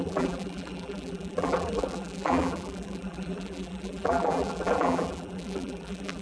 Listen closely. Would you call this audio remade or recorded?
remade